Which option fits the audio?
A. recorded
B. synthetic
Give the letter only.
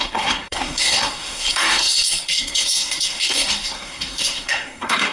B